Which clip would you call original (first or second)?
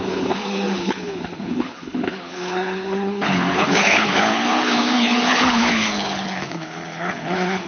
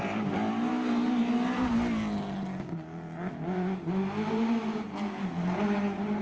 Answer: second